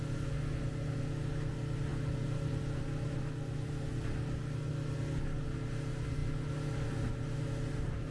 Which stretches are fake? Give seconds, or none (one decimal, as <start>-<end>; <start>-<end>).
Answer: none